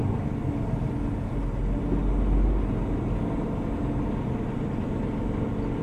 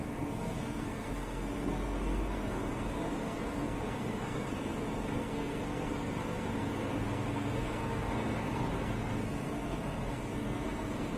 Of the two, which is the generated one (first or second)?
second